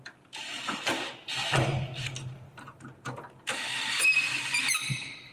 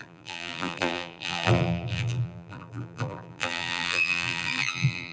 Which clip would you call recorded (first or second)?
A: first